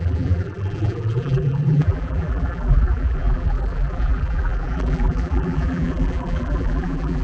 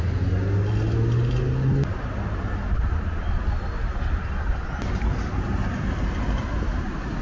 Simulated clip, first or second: first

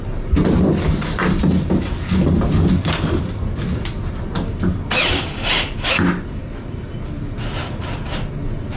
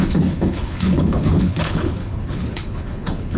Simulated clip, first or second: second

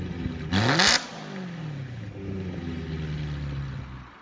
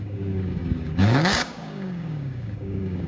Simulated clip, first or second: second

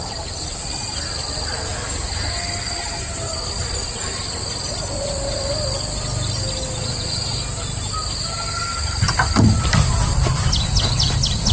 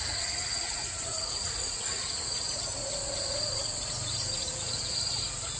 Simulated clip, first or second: second